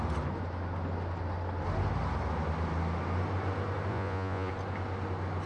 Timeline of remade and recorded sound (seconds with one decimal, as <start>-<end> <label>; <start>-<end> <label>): 0.0-3.9 recorded; 3.9-4.5 remade; 4.5-5.5 recorded